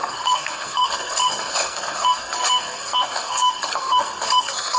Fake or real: fake